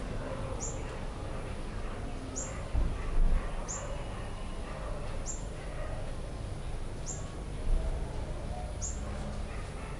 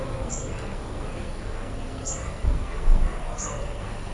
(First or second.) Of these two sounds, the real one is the first